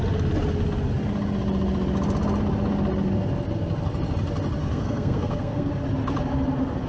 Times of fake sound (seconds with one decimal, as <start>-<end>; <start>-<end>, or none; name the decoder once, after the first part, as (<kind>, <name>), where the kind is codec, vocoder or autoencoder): 4.6-5.7 (codec, SNAC)